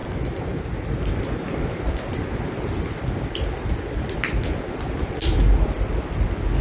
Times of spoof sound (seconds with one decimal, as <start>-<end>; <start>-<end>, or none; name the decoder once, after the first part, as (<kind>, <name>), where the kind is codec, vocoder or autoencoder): 0.0-6.6 (vocoder, BigVGAN v2)